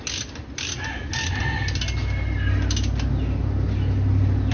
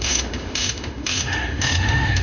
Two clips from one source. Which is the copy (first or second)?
second